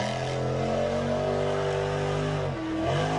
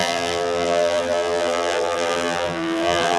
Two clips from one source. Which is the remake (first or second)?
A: second